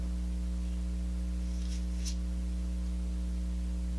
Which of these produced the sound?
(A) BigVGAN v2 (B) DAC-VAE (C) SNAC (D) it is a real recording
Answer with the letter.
D